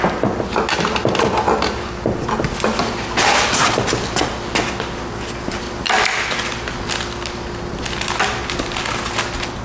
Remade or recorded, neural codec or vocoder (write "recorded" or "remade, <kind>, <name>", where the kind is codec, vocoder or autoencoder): recorded